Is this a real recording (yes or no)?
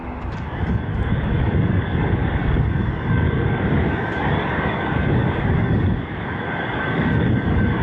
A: no